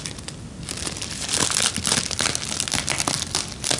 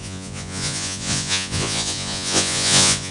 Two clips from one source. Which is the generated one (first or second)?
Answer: second